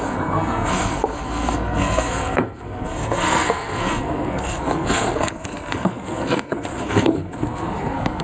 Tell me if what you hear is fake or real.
fake